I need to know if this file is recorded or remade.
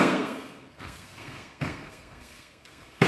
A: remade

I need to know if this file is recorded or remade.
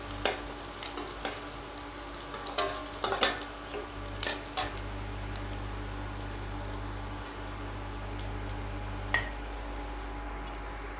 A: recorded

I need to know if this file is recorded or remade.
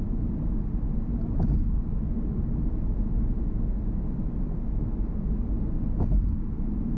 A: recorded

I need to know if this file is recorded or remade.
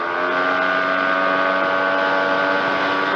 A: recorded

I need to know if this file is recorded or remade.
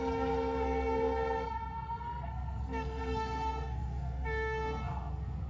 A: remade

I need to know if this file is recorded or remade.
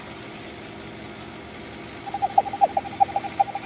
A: recorded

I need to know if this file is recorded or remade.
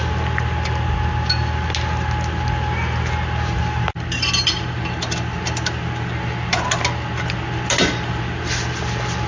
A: recorded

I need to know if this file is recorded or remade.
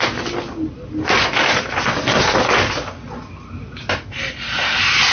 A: recorded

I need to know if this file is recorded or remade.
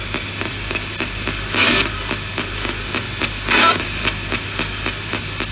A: recorded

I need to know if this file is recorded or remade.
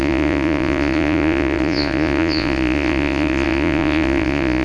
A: remade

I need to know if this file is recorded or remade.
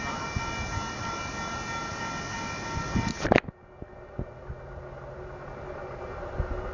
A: recorded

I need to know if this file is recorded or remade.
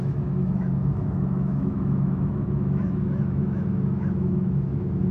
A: remade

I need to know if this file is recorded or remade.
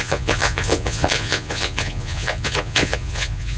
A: remade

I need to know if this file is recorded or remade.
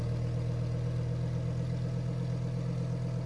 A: recorded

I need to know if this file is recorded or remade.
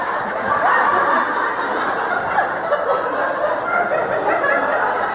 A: recorded